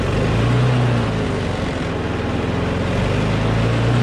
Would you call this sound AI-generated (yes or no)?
no